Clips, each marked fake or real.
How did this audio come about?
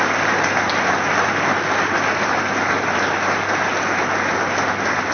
real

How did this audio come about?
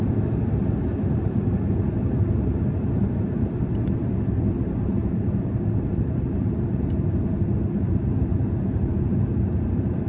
fake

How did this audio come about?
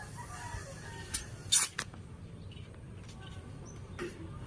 real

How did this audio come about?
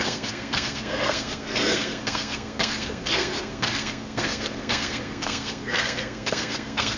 fake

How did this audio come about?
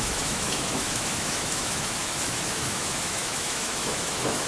fake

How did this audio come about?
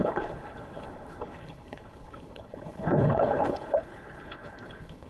fake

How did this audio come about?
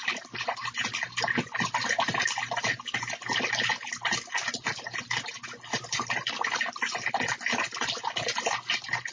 real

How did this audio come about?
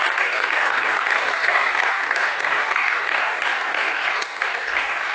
fake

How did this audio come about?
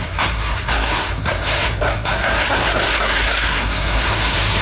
fake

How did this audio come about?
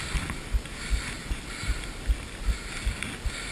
real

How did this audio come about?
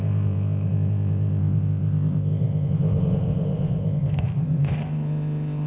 fake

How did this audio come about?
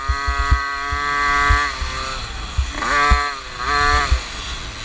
real